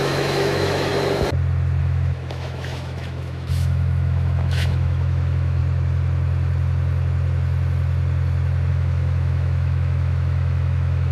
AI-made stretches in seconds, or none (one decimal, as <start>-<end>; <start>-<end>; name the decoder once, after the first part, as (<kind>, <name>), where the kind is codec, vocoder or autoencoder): 0.0-0.9 (autoencoder, DAC-VAE); 1.8-5.6; 8.7-11.1